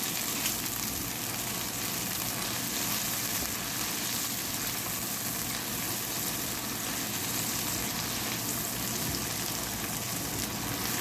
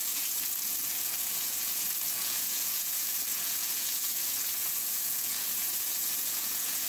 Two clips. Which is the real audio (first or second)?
first